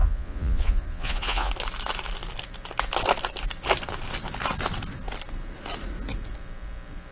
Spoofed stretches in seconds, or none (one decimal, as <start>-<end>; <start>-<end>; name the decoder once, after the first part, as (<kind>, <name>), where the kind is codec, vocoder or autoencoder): 0.0-1.5 (vocoder, Vocos)